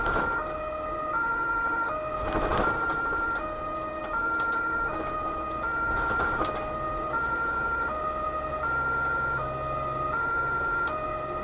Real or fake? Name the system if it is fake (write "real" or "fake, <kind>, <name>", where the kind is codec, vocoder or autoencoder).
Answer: real